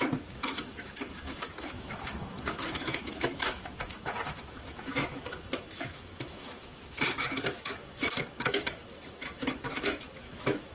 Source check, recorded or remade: remade